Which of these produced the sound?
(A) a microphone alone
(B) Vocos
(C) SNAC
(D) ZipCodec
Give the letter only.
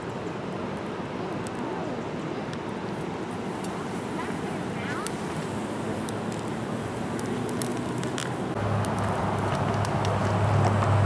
A